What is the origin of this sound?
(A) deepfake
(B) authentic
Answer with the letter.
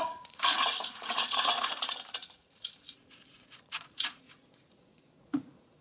A